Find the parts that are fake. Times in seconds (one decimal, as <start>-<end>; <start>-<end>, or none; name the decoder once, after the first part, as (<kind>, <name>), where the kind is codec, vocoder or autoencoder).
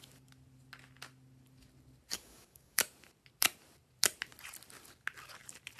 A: 2.1-2.8 (codec, DAC)